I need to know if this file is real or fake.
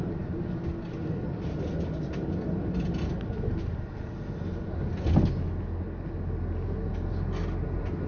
real